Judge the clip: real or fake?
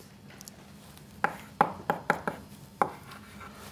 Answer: real